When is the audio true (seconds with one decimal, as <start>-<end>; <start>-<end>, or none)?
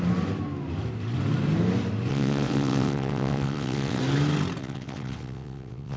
0.0-2.1; 4.0-4.6